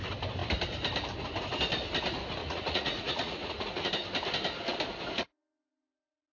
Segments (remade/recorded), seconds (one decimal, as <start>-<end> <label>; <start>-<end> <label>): 0.0-2.4 recorded; 2.4-3.9 remade; 3.9-6.3 recorded